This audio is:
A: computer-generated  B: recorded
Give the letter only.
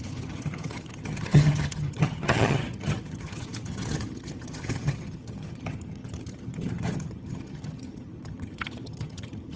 A